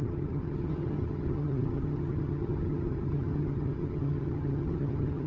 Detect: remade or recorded remade